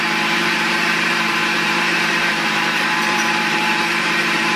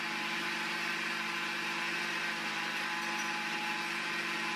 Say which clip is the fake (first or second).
first